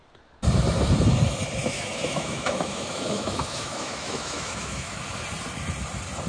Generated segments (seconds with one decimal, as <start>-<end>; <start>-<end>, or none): 1.6-5.0